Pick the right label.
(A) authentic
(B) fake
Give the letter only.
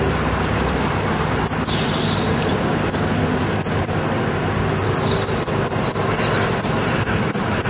A